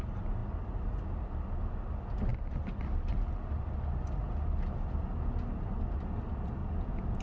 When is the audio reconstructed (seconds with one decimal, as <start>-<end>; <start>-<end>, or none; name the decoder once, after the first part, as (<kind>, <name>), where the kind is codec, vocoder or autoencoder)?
6.6-7.2 (vocoder, Vocos)